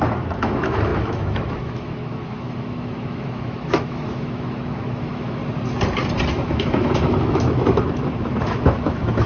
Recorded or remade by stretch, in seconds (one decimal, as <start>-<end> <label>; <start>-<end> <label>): 0.0-5.4 remade; 5.4-6.3 recorded; 6.3-9.3 remade